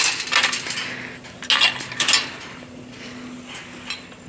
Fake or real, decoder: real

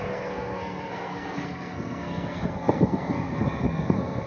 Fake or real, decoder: fake, codec, SNAC